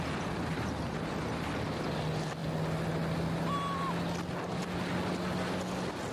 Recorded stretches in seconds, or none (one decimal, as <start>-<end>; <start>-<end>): 0.0-6.1